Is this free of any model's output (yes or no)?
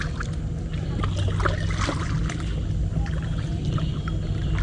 yes